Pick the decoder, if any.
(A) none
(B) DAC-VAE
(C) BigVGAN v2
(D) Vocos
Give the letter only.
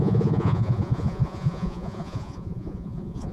D